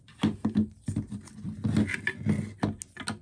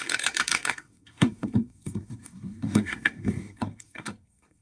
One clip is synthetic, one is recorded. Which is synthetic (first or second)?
second